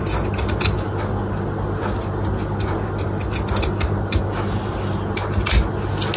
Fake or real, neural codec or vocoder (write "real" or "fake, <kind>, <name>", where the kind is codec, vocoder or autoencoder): real